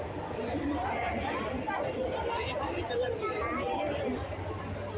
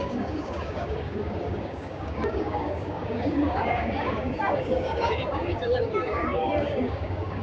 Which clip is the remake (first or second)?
second